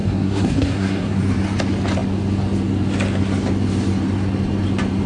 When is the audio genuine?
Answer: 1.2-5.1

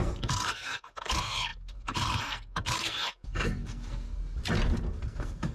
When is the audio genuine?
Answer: 4.2-4.9

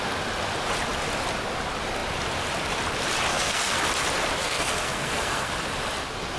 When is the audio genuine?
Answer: 0.0-3.3; 3.8-4.4; 5.5-6.4

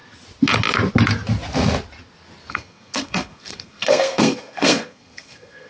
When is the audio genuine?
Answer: 0.0-2.5

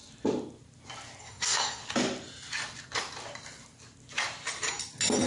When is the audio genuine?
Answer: 0.0-1.2; 1.8-5.3

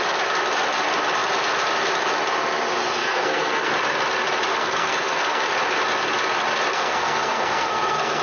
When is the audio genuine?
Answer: 0.0-3.0; 3.7-4.5; 5.5-6.7